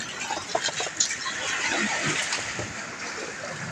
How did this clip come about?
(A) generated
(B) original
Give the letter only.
B